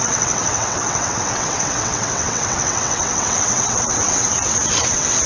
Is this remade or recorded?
remade